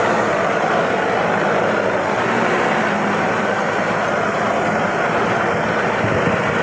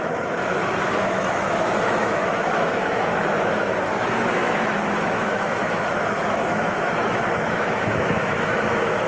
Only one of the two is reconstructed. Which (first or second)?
second